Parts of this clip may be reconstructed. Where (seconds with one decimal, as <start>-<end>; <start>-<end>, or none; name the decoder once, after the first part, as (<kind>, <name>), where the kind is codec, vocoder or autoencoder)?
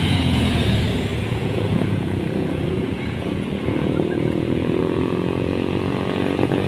0.0-6.7 (vocoder, Vocos)